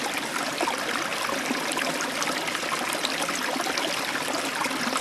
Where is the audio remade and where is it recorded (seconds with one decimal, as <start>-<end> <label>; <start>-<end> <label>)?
0.0-5.0 recorded